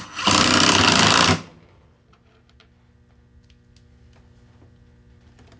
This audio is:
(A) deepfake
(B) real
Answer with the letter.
B